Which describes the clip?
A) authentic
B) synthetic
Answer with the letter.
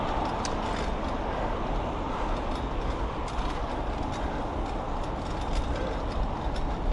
A